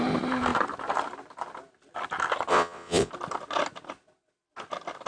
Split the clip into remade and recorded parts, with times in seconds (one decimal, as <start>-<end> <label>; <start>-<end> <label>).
0.0-2.5 recorded; 2.5-3.1 remade; 3.1-5.1 recorded